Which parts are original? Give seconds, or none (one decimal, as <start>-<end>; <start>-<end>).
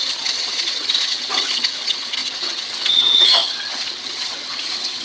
none